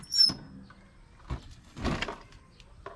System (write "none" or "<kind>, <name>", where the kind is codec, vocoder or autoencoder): none